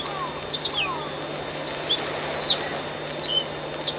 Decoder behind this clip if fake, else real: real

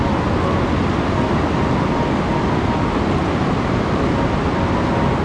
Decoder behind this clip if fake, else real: real